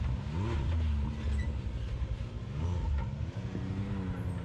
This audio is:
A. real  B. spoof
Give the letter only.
A